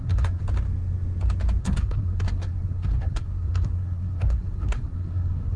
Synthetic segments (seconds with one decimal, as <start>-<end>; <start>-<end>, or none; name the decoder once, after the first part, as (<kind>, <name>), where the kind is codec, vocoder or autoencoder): 0.0-0.4 (codec, SNAC); 1.6-5.6